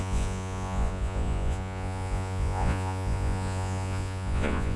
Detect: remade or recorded remade